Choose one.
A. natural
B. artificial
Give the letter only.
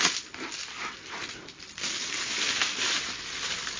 A